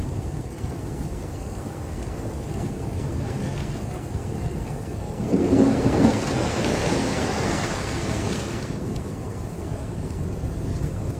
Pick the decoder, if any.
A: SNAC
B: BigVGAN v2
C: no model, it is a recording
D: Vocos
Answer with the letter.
A